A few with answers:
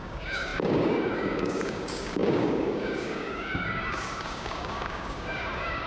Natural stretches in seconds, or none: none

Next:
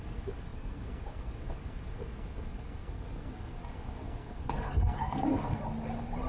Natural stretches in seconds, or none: 5.6-6.3

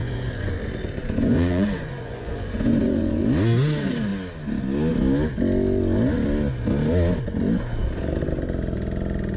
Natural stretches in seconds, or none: 3.2-9.4